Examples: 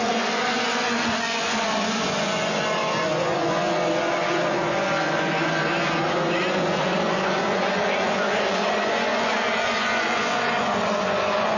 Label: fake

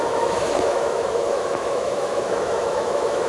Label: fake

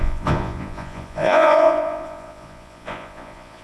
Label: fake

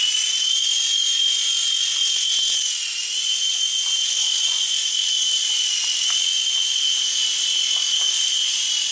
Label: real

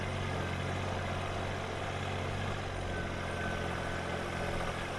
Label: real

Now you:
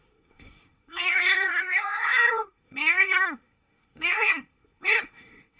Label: fake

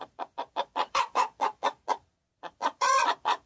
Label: fake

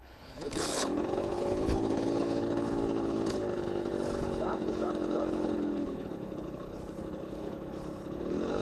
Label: fake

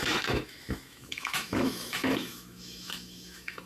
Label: fake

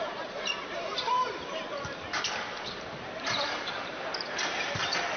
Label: fake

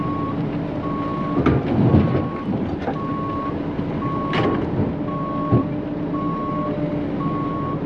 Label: real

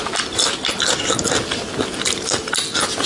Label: real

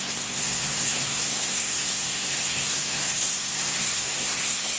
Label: fake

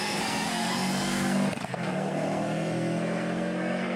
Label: fake